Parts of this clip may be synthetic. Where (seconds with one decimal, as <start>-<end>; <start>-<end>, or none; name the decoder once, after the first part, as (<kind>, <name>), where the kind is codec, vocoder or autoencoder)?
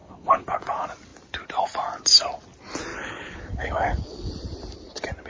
0.0-0.6 (codec, HILCodec); 2.9-4.3